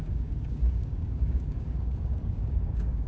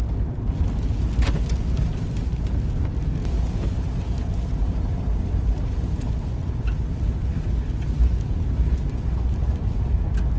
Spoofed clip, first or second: first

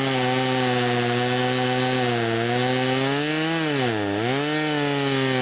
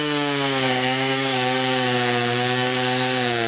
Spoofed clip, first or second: second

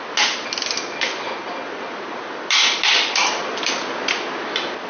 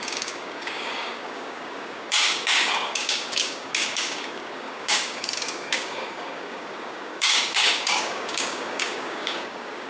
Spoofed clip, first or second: second